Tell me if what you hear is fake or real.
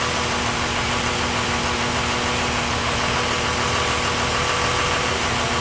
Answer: real